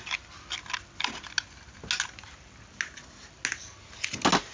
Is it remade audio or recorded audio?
recorded